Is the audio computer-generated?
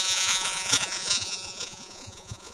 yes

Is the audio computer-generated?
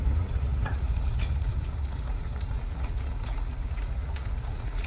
yes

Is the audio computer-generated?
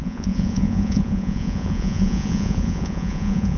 yes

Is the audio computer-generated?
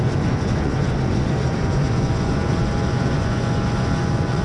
yes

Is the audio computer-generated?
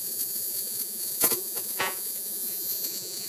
yes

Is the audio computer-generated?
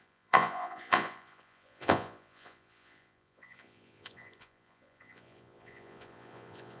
yes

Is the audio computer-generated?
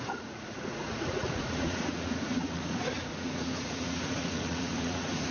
yes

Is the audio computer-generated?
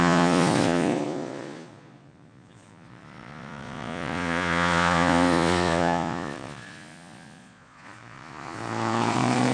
yes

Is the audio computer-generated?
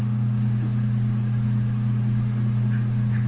no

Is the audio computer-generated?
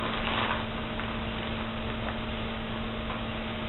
no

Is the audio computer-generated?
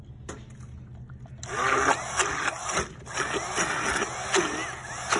no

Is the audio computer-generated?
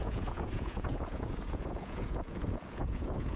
yes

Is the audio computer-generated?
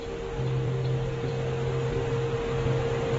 no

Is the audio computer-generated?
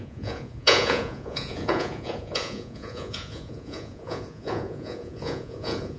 yes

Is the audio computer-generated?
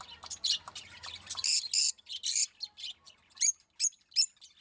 no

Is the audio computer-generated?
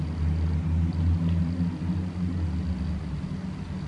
no